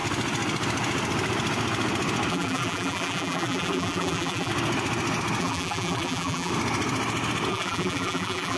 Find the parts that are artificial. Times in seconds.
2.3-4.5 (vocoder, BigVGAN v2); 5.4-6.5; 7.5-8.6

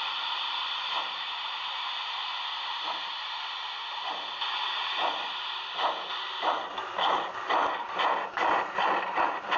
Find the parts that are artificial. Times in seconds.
0.0-2.3 (vocoder, BigVGAN v2); 5.4-9.6

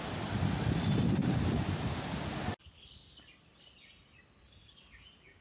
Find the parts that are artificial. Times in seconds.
none

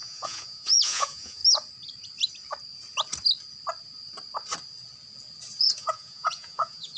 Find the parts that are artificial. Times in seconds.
0.0-1.4 (vocoder, Vocos); 5.6-7.0

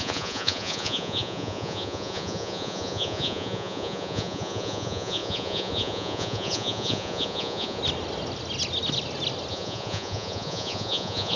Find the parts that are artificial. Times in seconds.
0.0-7.8 (vocoder, Vocos); 9.5-11.4

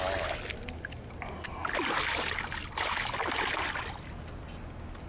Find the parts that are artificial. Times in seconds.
1.6-3.8 (vocoder, BigVGAN v2)